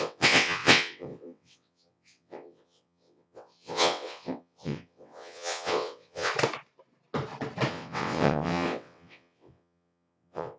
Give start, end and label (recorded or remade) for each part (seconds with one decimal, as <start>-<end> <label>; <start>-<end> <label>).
0.0-6.3 remade; 6.3-7.7 recorded; 7.7-10.6 remade